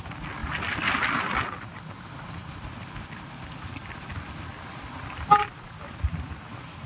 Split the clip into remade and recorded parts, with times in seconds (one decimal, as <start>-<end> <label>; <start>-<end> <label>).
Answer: 0.0-0.4 recorded; 0.4-1.9 remade; 1.9-2.4 recorded; 2.4-5.0 remade; 5.0-6.9 recorded